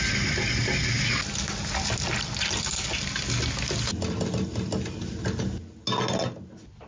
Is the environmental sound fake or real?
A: real